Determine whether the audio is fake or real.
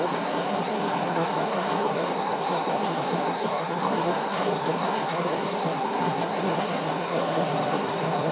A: fake